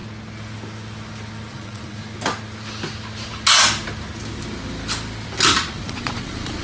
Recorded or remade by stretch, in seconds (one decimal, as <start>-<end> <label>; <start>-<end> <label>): 0.0-1.5 recorded; 1.5-2.0 remade; 2.0-5.8 recorded; 5.8-6.6 remade